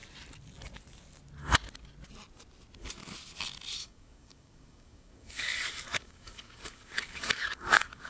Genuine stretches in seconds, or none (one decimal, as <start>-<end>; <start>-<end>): 0.0-3.8